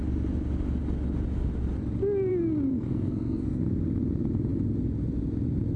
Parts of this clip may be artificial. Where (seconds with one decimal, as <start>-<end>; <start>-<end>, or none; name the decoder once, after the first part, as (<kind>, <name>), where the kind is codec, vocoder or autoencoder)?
2.7-3.6 (codec, SNAC)